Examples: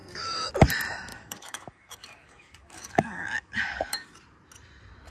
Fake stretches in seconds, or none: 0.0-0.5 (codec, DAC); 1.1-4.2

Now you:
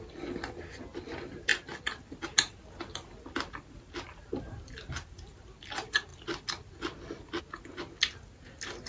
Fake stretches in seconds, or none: none

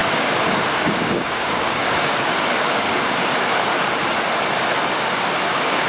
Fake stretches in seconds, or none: 0.0-3.7 (codec, DAC); 4.9-5.9

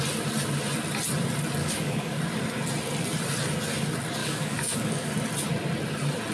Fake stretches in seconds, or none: 1.6-2.2 (codec, DAC); 4.2-5.1